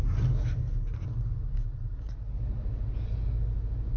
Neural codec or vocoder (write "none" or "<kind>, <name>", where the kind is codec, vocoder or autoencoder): none